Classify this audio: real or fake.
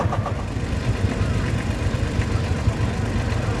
real